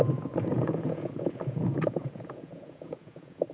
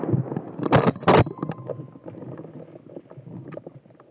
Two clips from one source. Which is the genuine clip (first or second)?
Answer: second